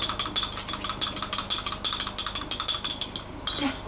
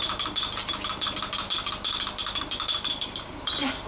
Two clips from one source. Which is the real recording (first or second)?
first